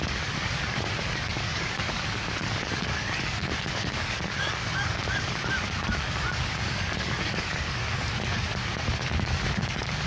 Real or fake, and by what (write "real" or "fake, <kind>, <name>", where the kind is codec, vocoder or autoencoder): fake, codec, DAC